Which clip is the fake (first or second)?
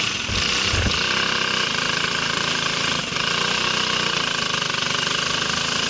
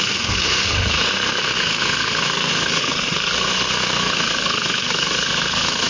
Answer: second